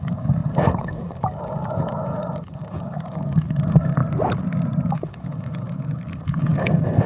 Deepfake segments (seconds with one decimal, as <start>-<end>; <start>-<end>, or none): 0.0-4.0; 4.9-7.1